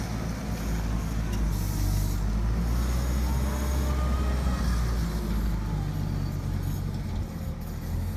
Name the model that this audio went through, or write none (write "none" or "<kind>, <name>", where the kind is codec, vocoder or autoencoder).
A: none